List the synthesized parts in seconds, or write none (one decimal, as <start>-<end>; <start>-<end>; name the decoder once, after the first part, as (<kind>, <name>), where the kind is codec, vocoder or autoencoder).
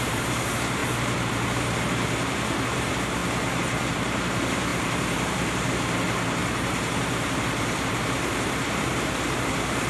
0.0-3.2 (vocoder, BigVGAN v2); 3.9-9.9